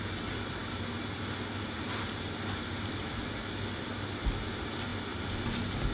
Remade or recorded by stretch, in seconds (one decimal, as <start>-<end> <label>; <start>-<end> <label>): 0.0-5.9 recorded